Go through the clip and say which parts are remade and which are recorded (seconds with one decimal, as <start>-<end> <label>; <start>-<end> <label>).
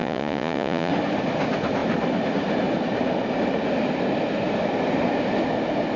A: 0.0-0.9 remade; 0.9-6.0 recorded